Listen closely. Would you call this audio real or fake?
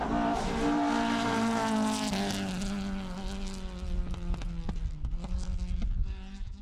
real